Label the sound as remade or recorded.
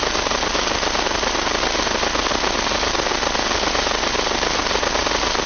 recorded